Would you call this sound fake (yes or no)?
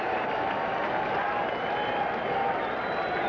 no